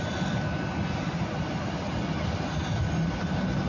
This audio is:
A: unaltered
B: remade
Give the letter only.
A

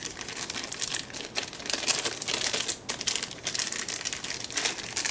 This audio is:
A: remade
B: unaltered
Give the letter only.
B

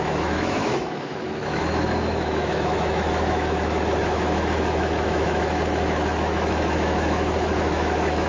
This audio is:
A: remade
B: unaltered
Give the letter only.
A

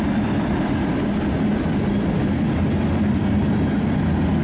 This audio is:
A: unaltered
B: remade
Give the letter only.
A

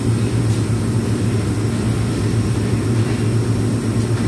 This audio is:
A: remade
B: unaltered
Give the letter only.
B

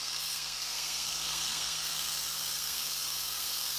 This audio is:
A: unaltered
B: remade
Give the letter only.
B